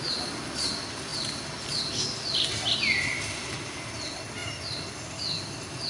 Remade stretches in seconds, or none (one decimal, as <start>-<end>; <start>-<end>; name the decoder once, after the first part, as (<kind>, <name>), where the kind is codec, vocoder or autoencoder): none